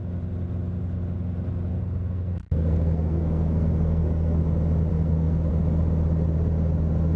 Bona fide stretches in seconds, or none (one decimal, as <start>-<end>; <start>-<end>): 0.0-1.7; 4.4-4.9; 5.5-7.2